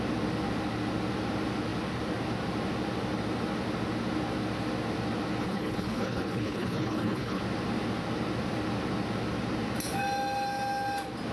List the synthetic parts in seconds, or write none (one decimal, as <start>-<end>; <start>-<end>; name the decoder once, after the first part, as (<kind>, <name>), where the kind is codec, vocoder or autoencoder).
5.4-7.4 (codec, HILCodec)